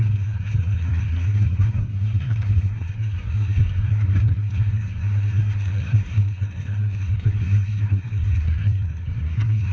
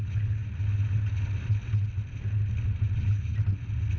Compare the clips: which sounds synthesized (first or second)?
first